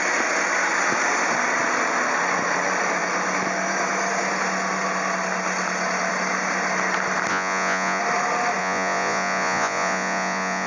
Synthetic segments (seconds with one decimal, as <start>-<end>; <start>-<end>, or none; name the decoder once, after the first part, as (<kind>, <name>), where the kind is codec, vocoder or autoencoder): 7.3-8.0 (vocoder, Vocos); 8.6-10.7